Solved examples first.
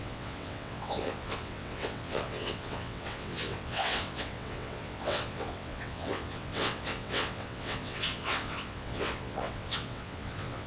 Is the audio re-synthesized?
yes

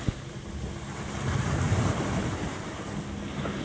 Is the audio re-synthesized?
no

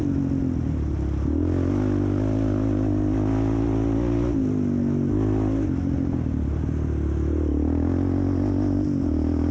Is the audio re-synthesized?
no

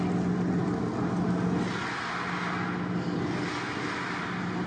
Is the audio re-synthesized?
no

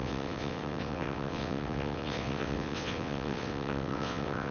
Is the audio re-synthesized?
yes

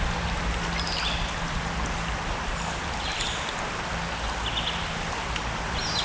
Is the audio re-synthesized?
no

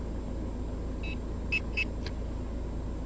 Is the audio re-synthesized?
no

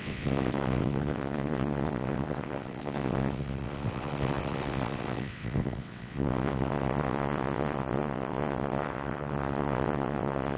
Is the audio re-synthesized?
yes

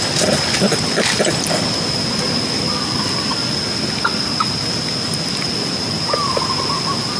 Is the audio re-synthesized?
no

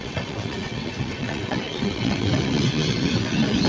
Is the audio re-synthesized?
yes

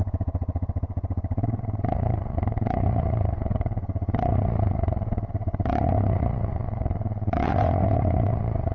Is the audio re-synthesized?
yes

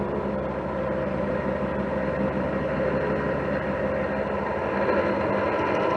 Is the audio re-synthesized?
no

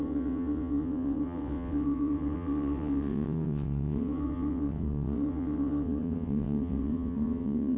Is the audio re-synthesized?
yes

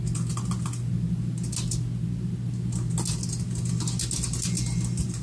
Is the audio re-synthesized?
no